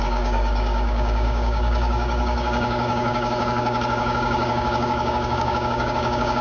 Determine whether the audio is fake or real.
fake